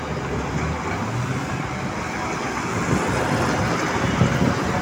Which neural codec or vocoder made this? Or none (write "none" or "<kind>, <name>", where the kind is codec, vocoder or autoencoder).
none